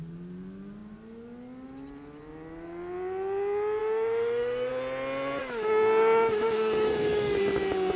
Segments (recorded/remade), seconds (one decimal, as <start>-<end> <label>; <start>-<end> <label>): 0.0-3.8 recorded; 3.8-4.7 remade; 4.7-5.4 recorded; 5.4-7.4 remade; 7.4-8.0 recorded